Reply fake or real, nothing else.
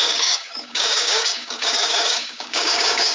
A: fake